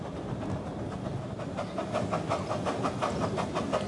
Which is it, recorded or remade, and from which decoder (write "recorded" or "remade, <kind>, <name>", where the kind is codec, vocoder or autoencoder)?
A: recorded